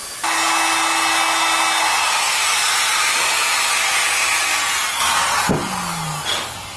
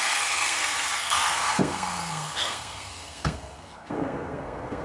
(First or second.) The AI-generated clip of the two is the second